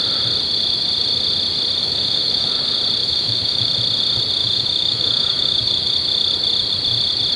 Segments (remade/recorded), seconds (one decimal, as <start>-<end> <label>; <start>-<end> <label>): 0.0-1.8 recorded; 1.8-2.5 remade; 2.5-3.0 recorded; 3.0-3.7 remade; 3.7-4.4 recorded; 4.4-5.6 remade; 5.6-7.4 recorded